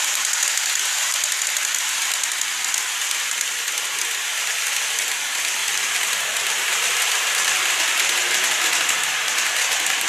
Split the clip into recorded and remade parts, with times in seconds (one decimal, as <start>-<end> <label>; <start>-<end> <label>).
0.0-5.6 recorded; 5.6-8.7 remade; 8.7-10.1 recorded